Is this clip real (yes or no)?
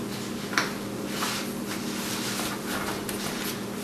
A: yes